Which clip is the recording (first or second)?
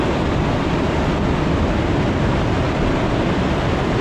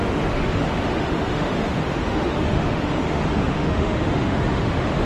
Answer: first